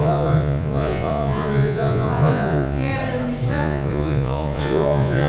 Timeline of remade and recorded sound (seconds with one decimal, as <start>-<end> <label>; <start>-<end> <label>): 0.0-2.9 remade; 2.9-3.5 recorded; 3.5-5.3 remade